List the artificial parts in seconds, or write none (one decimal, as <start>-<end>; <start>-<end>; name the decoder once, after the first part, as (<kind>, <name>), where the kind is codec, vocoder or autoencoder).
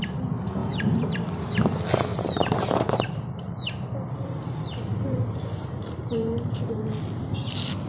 0.6-1.3 (vocoder, BigVGAN v2); 2.1-6.8